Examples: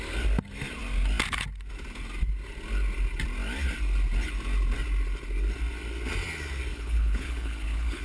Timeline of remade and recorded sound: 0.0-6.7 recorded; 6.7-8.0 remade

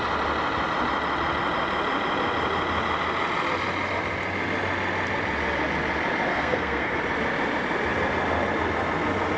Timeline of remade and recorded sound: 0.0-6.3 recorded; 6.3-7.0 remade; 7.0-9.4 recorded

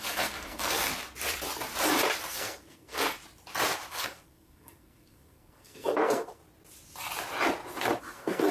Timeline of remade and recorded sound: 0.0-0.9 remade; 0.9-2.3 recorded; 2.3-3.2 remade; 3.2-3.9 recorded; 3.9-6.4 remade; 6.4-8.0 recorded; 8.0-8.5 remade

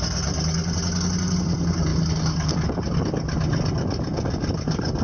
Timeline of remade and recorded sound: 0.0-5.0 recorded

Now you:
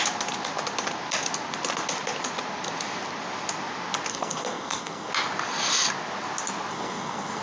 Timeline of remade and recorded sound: 0.0-4.1 recorded; 4.1-5.1 remade; 5.1-6.7 recorded; 6.7-7.4 remade

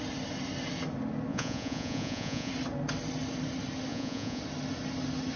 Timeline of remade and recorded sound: 0.0-1.3 recorded; 1.3-2.5 remade; 2.5-3.9 recorded; 3.9-4.4 remade; 4.4-5.4 recorded